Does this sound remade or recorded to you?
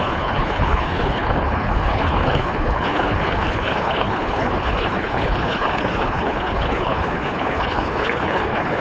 remade